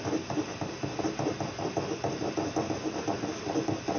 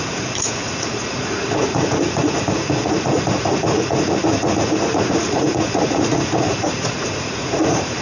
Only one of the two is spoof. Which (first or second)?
second